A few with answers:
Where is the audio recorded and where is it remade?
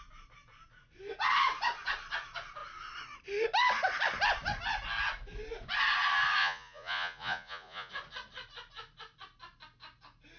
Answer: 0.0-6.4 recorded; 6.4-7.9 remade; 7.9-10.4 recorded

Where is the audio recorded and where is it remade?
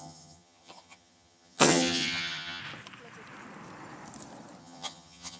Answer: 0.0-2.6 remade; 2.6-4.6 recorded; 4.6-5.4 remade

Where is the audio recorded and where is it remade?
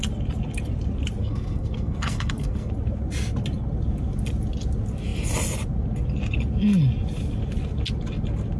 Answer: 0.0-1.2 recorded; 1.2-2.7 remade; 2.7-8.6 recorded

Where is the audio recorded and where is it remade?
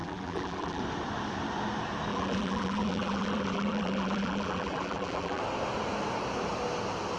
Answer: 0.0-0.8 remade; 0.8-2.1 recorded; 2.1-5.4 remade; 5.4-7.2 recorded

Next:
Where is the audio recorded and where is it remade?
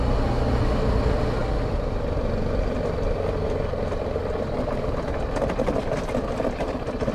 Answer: 0.0-7.1 recorded